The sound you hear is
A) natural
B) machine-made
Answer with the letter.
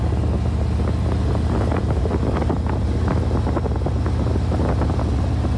A